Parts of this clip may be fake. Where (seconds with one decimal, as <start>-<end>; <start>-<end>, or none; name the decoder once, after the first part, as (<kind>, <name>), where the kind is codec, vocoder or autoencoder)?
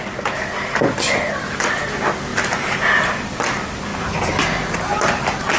none